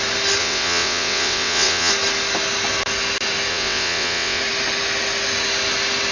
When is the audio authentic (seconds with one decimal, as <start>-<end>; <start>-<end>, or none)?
0.0-0.4; 1.9-3.5; 4.4-6.1